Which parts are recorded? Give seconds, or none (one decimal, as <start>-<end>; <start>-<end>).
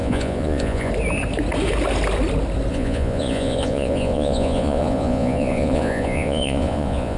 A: 0.9-2.7